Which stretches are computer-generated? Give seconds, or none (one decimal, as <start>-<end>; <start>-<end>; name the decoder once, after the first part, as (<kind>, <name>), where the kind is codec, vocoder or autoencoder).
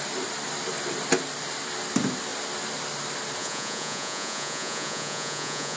3.4-5.8 (vocoder, Vocos)